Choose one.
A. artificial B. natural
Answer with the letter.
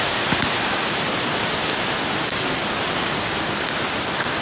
B